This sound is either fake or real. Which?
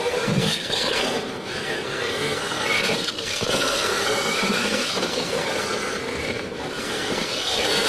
fake